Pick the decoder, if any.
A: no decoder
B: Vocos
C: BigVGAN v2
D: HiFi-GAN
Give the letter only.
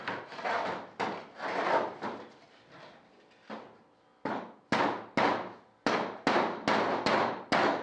A